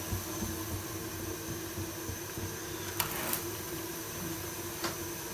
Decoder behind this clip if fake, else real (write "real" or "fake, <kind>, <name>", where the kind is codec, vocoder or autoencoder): real